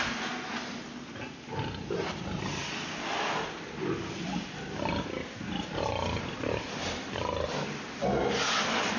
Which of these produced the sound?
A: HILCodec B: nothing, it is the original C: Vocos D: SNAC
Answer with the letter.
B